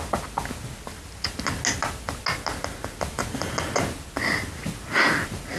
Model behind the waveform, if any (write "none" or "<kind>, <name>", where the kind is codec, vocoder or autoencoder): none